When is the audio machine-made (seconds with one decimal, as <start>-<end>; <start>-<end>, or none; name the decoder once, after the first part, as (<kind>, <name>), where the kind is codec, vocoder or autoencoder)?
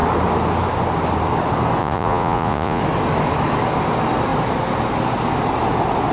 1.8-2.8 (vocoder, Vocos)